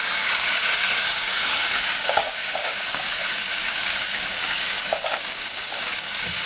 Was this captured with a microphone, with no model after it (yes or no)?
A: no